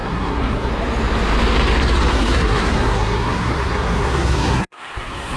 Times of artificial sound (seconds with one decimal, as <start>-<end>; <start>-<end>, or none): 0.0-0.7; 2.1-5.4

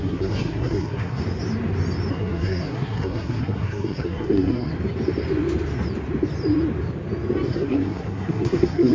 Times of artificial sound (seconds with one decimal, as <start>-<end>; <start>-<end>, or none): 0.0-1.2; 2.1-4.7; 7.5-8.9

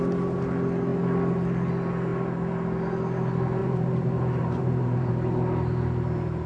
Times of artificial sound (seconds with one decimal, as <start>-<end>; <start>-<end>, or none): 3.6-5.1

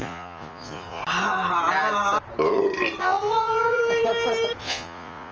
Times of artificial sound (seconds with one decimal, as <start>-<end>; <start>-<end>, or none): 0.0-1.0; 3.0-3.8; 4.6-5.3

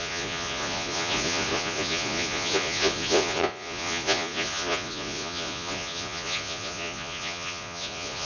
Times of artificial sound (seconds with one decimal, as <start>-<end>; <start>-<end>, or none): 0.0-8.3